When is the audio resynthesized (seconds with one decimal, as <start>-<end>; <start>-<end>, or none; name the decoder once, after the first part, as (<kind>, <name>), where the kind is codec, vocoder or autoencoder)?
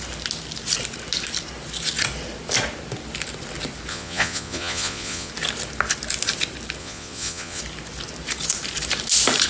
3.9-5.3 (vocoder, Vocos); 6.8-7.6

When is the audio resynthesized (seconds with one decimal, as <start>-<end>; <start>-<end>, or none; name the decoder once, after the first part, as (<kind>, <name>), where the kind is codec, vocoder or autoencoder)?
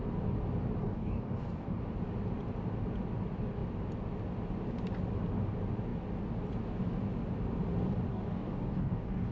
0.8-1.8 (codec, DAC); 8.1-9.3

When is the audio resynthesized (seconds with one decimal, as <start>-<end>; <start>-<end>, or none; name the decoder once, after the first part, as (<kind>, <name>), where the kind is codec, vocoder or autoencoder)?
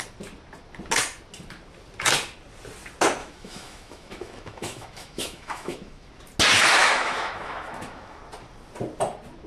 3.2-6.1 (autoencoder, DAC-VAE); 6.8-8.2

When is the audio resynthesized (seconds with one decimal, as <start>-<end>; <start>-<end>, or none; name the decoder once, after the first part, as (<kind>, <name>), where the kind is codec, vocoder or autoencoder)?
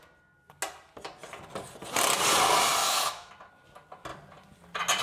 2.8-3.3 (autoencoder, DAC-VAE)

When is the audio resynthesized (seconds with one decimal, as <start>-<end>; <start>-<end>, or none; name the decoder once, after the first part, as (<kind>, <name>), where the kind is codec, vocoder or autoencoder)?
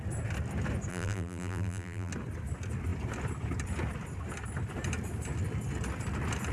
0.9-2.1 (vocoder, BigVGAN v2)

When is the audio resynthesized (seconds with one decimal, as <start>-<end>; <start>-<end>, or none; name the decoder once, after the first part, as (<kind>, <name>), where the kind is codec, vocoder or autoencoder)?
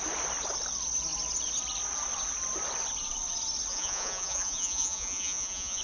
3.7-5.8 (vocoder, Vocos)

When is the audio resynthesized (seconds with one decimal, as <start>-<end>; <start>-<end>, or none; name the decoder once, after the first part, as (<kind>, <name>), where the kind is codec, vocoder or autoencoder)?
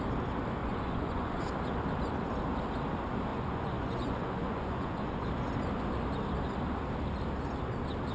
0.6-1.4 (vocoder, Vocos); 3.3-5.3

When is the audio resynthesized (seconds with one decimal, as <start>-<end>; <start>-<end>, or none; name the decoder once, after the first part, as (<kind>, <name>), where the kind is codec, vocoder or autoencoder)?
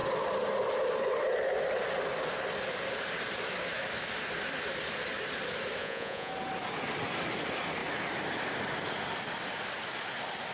5.8-6.3 (vocoder, Vocos)